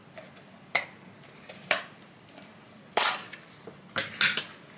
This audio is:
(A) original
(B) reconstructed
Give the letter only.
A